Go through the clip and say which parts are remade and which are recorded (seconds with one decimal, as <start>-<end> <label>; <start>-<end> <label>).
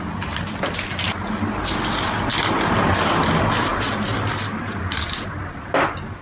0.0-6.2 recorded